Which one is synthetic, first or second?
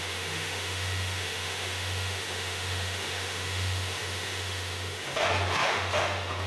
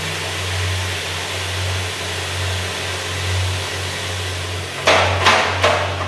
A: first